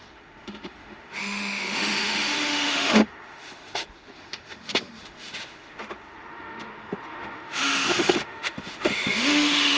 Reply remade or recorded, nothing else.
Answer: remade